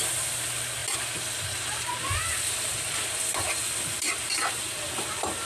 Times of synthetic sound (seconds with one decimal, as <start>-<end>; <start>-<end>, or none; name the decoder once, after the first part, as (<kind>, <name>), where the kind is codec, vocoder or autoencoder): none